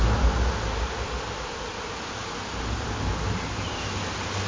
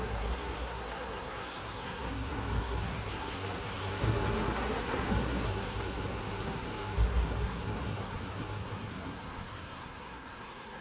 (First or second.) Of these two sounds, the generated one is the second